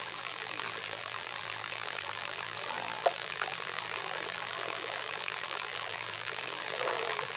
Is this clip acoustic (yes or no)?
no